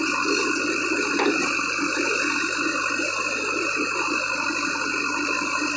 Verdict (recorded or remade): recorded